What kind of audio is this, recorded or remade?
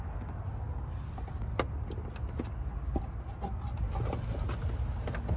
recorded